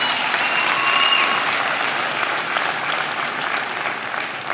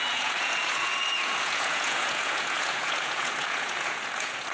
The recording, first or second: first